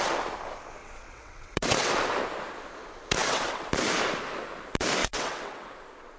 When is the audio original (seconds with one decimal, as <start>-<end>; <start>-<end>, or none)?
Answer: 0.0-0.8; 1.9-3.2; 3.7-5.0; 5.8-6.2